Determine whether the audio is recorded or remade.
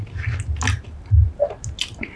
recorded